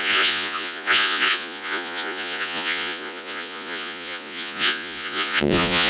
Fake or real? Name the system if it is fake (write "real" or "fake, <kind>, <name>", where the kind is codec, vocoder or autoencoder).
fake, vocoder, Vocos